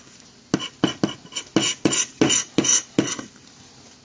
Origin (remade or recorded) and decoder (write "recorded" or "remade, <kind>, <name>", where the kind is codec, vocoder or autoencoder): recorded